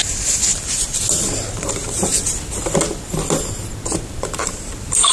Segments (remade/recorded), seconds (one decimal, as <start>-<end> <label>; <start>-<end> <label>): 0.0-2.1 remade; 2.1-4.0 recorded; 4.0-5.1 remade